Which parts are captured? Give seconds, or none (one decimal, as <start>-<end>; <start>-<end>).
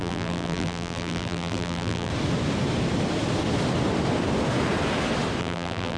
2.1-5.4